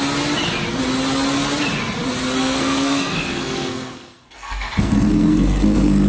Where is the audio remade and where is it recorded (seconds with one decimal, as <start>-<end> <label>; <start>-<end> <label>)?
0.0-2.4 recorded; 2.4-6.1 remade